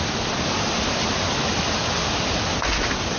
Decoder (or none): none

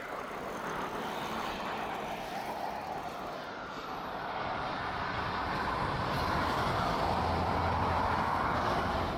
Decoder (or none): none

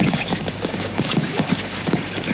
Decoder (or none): codec, DAC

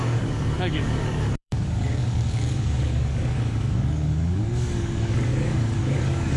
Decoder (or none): codec, DAC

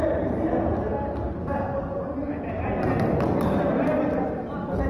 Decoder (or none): none